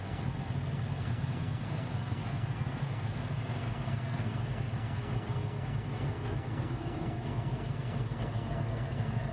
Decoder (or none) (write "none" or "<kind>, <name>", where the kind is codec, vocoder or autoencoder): codec, SNAC